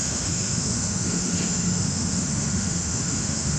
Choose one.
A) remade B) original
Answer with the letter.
A